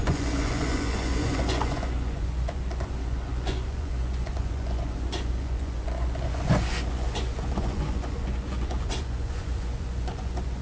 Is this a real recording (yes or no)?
no